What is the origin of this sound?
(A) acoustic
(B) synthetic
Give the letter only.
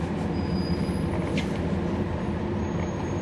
A